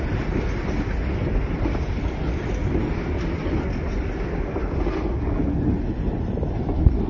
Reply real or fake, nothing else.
real